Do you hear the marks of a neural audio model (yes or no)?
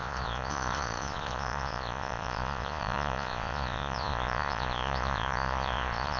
yes